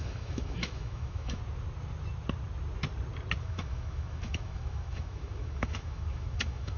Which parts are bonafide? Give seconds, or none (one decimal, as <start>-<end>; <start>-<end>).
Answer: 1.4-3.4